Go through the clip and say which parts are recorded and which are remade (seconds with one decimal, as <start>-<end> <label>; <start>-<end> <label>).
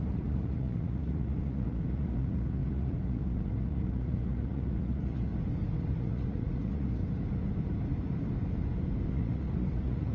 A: 0.0-5.3 remade; 5.3-5.9 recorded; 5.9-7.0 remade; 7.0-9.1 recorded; 9.1-10.1 remade